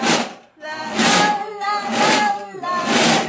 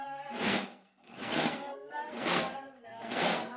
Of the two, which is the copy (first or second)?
second